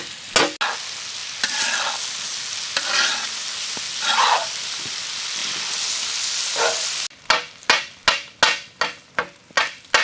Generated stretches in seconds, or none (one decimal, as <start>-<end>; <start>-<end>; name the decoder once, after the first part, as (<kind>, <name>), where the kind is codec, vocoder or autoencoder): none